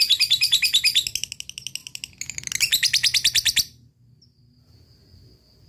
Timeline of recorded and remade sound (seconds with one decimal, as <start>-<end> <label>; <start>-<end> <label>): 0.0-5.7 recorded